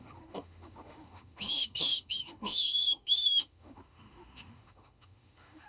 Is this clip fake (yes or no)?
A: yes